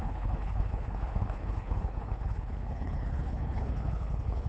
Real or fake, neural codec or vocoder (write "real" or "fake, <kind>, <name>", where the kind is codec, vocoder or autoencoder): fake, codec, HILCodec